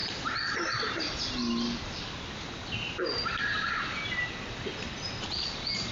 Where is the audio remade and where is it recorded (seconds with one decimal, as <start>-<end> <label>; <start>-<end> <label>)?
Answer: 0.0-5.9 recorded